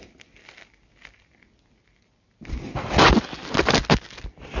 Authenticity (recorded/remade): recorded